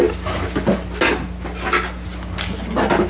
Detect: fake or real real